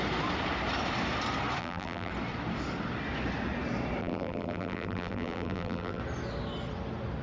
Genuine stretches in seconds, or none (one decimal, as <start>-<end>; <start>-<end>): 0.0-1.6; 2.1-4.0; 6.0-7.2